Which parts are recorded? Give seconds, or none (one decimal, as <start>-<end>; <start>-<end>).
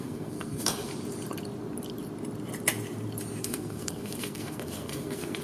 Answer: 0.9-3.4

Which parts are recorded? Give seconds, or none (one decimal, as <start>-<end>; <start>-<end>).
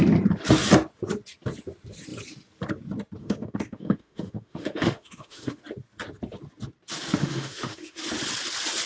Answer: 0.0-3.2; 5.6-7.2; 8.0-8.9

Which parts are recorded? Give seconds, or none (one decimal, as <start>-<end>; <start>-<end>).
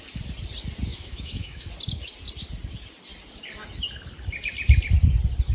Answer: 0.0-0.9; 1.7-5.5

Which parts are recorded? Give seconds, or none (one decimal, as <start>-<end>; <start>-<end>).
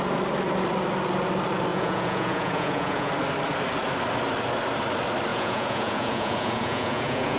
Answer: 0.0-1.7; 3.1-5.3